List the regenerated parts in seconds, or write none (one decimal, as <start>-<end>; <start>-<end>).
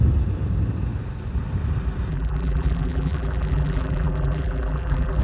2.1-5.2